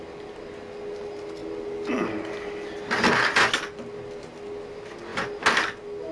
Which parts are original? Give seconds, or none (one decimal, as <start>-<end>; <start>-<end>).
0.0-6.1